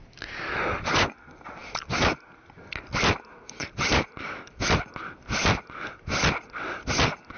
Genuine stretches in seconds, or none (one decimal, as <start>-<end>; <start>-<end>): 0.0-7.4